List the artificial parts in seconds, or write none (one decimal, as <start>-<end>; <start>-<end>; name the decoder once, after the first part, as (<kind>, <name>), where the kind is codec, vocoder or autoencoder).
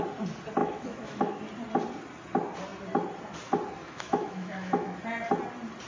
0.6-1.4 (autoencoder, DAC-VAE); 3.8-5.0